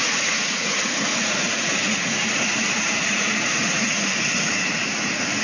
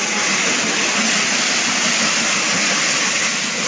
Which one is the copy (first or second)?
first